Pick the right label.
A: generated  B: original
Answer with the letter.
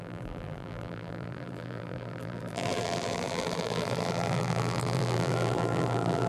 A